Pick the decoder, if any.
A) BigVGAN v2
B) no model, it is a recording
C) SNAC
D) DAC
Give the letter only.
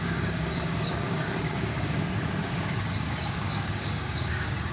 D